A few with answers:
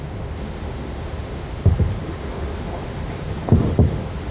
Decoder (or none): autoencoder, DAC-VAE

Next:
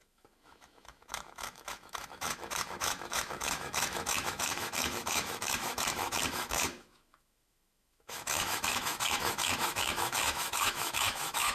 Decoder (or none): autoencoder, DAC-VAE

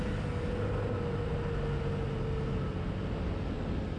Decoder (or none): none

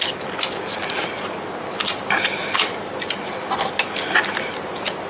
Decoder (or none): none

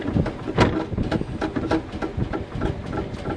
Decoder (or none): none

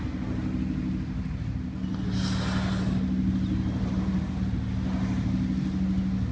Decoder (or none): none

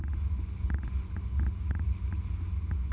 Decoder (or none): none